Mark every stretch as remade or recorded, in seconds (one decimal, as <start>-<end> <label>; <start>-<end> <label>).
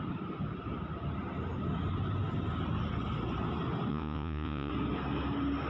0.0-3.9 recorded; 3.9-4.7 remade; 4.7-5.7 recorded